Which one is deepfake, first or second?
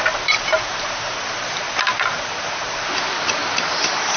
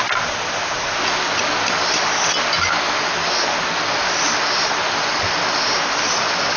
first